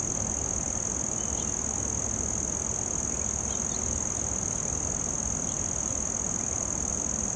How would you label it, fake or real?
real